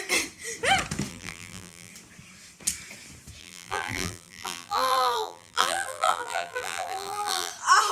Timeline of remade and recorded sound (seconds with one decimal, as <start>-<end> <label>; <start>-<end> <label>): 0.0-1.1 recorded; 1.1-1.9 remade; 1.9-3.4 recorded; 3.4-7.5 remade; 7.5-7.9 recorded